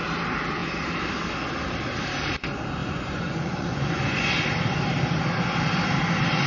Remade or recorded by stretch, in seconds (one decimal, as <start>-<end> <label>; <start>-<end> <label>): 0.0-2.8 recorded; 2.8-4.3 remade; 4.3-6.5 recorded